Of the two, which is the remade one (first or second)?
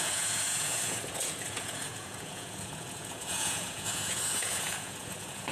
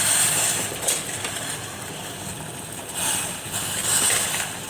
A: first